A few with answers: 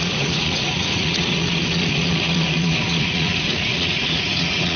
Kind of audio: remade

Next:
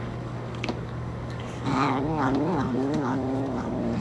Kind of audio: remade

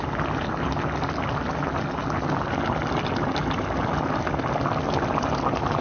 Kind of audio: recorded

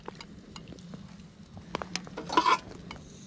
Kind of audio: recorded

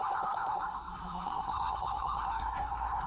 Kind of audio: remade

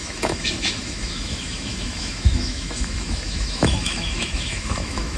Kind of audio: remade